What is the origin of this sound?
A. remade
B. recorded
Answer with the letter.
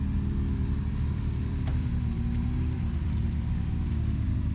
A